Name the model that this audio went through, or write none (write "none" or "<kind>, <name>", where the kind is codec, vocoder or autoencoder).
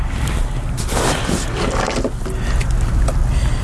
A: none